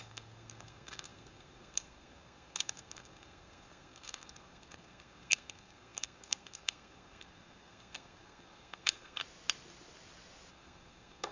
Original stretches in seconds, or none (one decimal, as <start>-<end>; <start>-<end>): 9.2-10.5